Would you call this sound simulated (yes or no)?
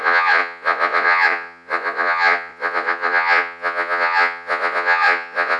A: yes